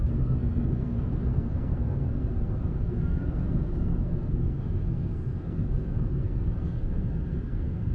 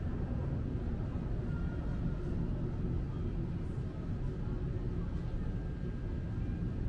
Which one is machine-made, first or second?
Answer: first